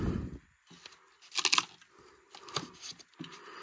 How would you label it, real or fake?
real